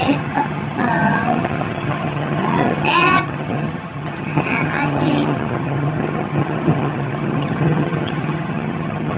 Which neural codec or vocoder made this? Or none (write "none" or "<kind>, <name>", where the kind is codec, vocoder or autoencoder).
vocoder, HiFi-GAN